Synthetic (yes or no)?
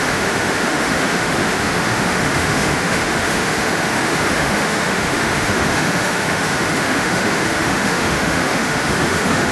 yes